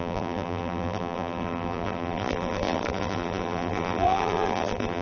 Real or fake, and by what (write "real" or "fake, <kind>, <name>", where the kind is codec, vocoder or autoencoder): fake, vocoder, BigVGAN v2